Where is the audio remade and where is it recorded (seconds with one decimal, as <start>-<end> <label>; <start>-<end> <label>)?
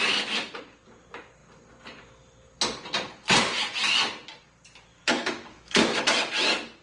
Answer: 0.0-4.9 recorded; 4.9-6.0 remade; 6.0-6.8 recorded